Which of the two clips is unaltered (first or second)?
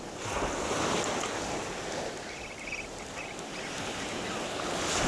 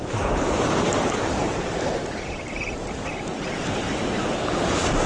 first